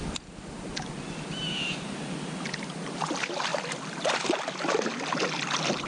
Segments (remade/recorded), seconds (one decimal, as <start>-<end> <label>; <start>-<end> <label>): 0.0-5.9 recorded